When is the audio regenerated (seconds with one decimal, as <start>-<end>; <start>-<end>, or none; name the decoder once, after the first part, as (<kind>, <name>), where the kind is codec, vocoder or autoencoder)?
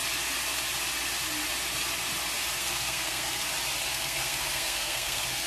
2.6-3.5 (codec, SNAC); 3.9-5.5